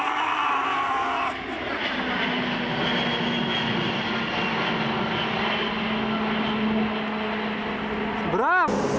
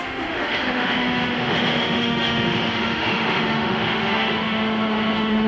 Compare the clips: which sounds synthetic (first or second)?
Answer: second